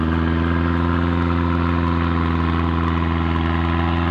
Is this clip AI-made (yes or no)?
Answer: no